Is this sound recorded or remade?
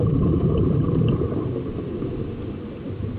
recorded